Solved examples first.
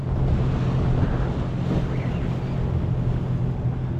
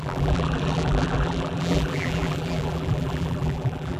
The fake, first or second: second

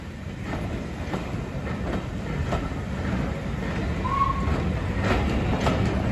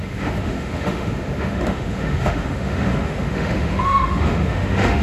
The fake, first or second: second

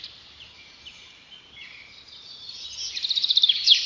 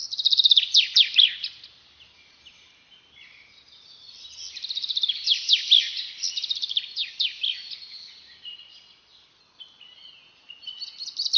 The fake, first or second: first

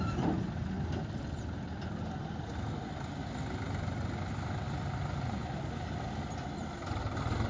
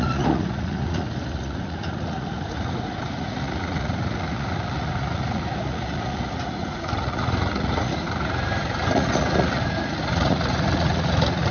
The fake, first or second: second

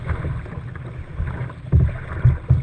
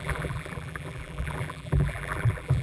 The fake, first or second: second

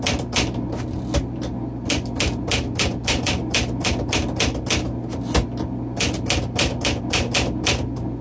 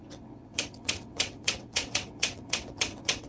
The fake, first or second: second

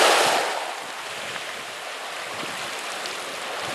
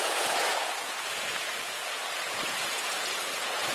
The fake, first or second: second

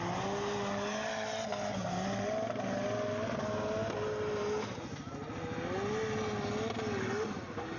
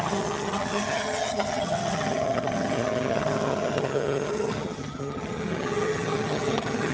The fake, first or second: second